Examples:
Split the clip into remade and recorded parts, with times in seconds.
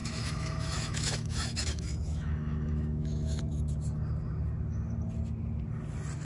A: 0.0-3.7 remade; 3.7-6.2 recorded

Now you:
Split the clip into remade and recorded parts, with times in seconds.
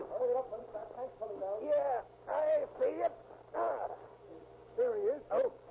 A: 0.0-4.3 remade; 4.3-4.8 recorded; 4.8-5.7 remade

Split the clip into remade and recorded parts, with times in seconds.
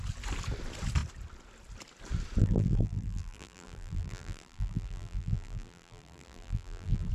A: 0.0-2.4 recorded; 2.4-7.1 remade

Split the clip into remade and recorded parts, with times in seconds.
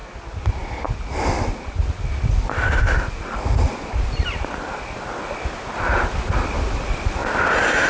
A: 0.0-7.9 recorded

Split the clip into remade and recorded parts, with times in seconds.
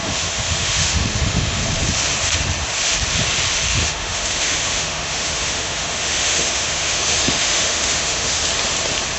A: 0.0-1.6 remade; 1.6-3.7 recorded; 3.7-8.4 remade; 8.4-9.2 recorded